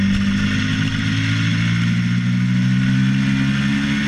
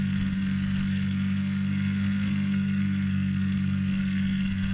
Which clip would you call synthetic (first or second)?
second